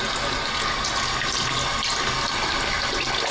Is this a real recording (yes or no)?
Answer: yes